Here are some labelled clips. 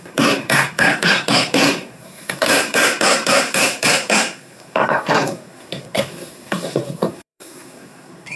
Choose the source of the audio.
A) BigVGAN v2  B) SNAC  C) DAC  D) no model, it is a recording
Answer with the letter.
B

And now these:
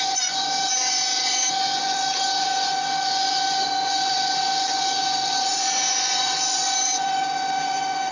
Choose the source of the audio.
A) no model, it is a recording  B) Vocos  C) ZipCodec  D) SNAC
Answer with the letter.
B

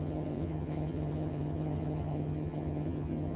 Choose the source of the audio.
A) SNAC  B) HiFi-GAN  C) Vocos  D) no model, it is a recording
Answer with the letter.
B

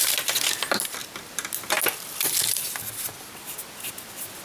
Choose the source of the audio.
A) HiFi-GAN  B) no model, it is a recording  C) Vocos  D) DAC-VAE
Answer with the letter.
B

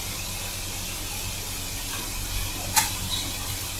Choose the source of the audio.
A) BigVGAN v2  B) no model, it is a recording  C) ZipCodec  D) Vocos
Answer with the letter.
A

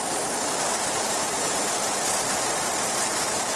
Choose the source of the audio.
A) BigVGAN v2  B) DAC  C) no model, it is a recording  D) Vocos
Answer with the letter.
C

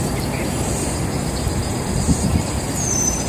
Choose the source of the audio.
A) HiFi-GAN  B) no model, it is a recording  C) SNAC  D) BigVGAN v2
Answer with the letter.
D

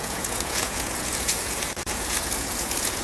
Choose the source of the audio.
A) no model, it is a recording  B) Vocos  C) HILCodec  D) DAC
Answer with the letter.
B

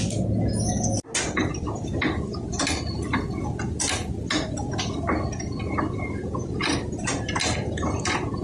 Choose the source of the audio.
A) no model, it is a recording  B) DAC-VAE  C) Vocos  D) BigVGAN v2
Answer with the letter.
A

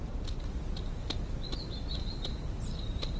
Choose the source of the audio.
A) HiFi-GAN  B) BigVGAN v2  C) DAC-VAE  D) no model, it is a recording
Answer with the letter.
D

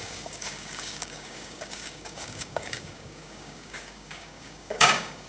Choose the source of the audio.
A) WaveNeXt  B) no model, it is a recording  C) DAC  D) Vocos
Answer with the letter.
C